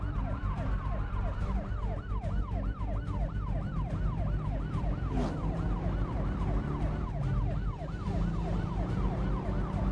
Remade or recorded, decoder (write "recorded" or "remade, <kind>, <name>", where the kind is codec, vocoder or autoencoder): recorded